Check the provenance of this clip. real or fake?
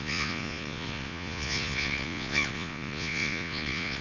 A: fake